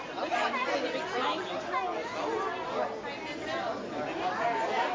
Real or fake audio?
real